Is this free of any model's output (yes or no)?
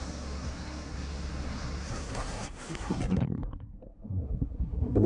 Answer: no